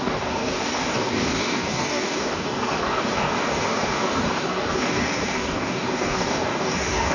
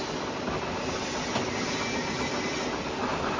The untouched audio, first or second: second